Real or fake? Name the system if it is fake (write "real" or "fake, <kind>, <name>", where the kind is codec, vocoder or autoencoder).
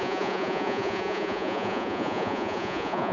fake, vocoder, Vocos